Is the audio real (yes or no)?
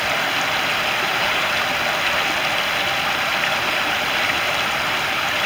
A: yes